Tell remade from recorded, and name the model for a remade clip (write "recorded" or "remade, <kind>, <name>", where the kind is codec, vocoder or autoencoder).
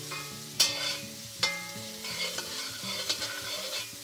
remade, vocoder, BigVGAN v2